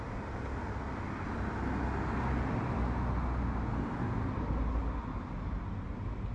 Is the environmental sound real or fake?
real